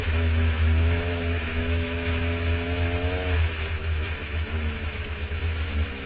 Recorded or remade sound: remade